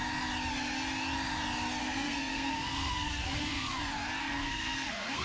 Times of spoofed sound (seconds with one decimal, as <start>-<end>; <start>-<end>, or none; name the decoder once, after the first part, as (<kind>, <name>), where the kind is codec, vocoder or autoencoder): 1.8-3.8 (codec, SNAC); 4.2-5.2